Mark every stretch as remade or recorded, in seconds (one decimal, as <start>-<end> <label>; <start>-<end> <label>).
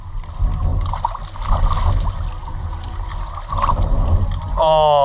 0.0-5.0 recorded